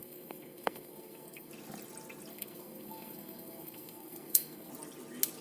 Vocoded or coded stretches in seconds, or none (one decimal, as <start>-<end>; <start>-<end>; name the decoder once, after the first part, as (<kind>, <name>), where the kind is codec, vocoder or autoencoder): 0.0-1.5 (codec, SNAC); 2.3-4.7